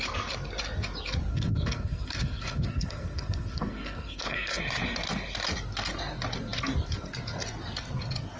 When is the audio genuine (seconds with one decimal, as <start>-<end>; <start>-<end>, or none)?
0.0-1.3; 4.6-8.4